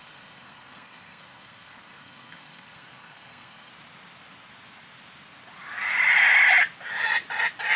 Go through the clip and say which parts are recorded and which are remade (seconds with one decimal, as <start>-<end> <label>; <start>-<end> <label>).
0.0-3.7 remade; 3.7-7.8 recorded